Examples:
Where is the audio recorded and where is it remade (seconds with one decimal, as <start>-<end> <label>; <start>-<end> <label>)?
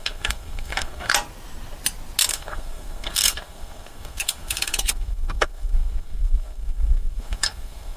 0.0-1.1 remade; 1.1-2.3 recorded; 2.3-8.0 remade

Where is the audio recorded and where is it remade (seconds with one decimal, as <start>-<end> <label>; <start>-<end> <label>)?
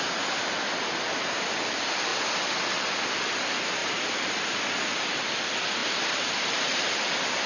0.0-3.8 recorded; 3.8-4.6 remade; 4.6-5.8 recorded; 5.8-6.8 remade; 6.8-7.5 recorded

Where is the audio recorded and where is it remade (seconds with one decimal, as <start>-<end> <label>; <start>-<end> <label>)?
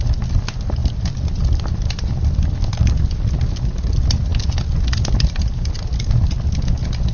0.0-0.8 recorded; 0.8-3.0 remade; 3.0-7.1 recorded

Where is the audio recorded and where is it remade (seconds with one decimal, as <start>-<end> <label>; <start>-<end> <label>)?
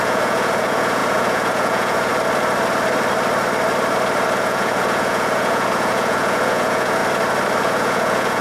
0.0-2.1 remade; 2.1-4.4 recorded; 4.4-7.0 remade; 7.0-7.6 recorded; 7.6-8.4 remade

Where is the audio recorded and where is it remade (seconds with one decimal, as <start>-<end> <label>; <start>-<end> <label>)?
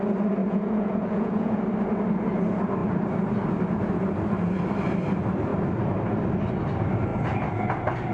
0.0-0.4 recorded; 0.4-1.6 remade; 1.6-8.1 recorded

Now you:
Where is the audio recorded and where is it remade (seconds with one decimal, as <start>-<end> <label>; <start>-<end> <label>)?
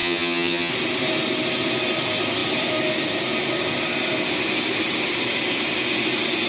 0.0-0.7 remade; 0.7-6.5 recorded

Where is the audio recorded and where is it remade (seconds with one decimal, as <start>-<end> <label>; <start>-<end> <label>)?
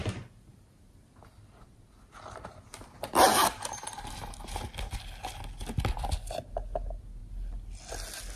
0.0-1.0 remade; 1.0-8.4 recorded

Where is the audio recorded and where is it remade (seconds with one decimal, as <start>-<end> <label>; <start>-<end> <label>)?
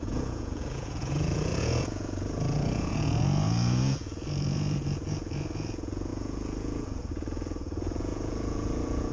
0.0-9.1 remade